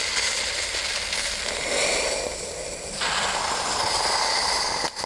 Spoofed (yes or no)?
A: no